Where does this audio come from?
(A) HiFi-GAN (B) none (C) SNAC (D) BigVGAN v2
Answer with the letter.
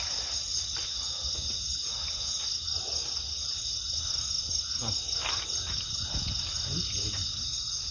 B